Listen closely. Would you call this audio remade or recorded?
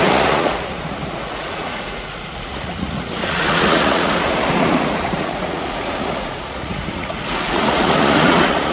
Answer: remade